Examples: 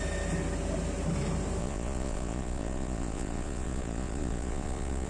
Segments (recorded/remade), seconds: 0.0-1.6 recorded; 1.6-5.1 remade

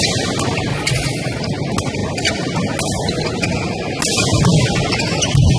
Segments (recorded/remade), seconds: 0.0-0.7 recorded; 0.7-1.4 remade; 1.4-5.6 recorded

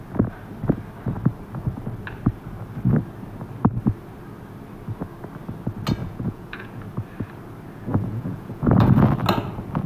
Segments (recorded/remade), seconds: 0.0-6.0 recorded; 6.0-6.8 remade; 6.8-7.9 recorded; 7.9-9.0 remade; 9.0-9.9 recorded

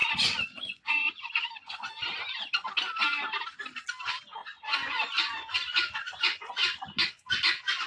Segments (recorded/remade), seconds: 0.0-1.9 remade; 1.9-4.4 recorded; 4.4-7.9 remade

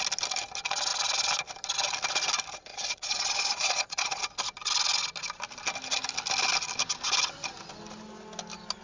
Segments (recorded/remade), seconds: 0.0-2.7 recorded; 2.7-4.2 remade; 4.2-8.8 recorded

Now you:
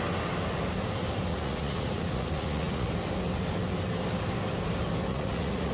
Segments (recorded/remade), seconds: 0.0-1.3 recorded; 1.3-2.9 remade; 2.9-5.1 recorded; 5.1-5.7 remade